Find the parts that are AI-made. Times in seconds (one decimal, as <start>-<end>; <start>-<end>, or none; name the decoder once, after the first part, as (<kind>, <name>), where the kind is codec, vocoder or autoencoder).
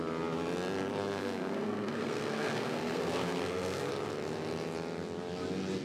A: 1.0-3.9 (codec, SNAC)